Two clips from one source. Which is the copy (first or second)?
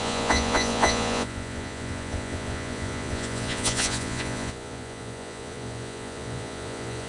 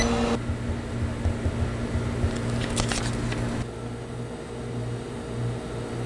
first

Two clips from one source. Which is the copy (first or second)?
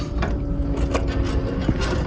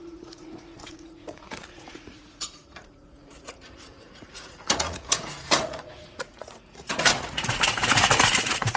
second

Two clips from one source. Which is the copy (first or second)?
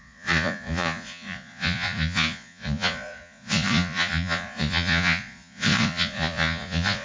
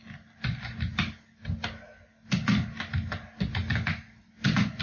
first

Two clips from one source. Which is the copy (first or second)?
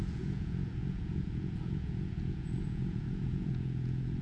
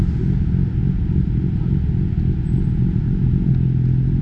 first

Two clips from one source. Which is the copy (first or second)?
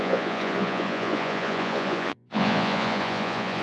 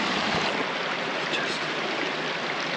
first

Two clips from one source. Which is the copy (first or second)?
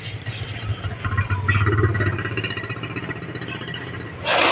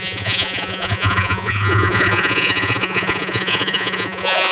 second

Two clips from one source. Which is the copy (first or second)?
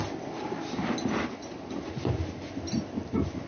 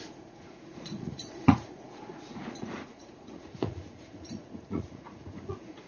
second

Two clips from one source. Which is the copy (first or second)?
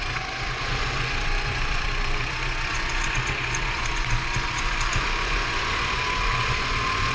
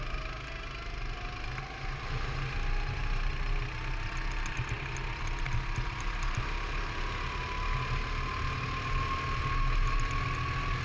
first